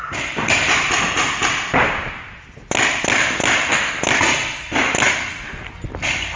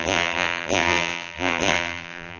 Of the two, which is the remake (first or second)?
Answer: second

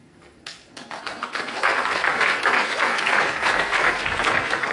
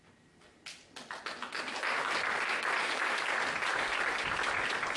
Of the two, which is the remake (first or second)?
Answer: first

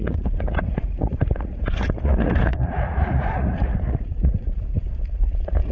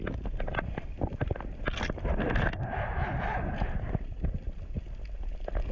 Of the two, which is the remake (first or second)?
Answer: first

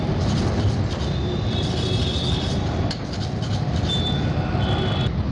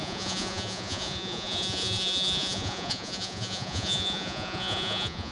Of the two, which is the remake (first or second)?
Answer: second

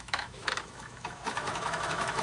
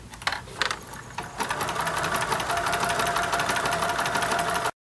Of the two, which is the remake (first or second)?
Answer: first